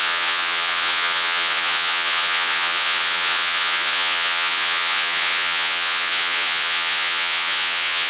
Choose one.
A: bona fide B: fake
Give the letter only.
B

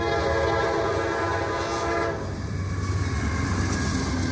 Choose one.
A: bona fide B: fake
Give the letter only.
A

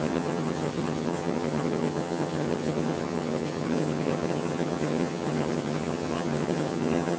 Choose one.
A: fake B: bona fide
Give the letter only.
A